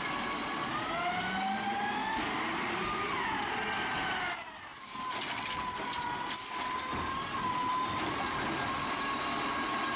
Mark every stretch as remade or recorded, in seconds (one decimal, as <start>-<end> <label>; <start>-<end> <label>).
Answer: 0.0-10.0 recorded